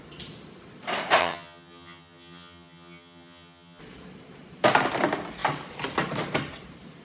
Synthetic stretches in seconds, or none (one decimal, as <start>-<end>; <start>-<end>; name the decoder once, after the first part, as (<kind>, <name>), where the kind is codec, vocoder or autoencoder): 1.2-3.8 (vocoder, HiFi-GAN)